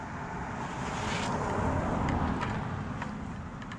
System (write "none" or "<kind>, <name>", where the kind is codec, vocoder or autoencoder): none